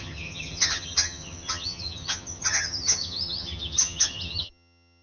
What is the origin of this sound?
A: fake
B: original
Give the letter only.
A